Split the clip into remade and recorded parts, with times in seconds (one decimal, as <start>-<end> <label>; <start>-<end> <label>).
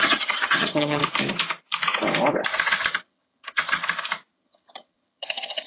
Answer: 0.0-1.0 remade; 1.0-2.9 recorded; 2.9-3.8 remade; 3.8-4.3 recorded; 4.3-5.7 remade